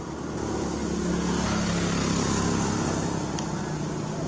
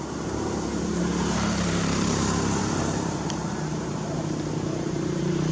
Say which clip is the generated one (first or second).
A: second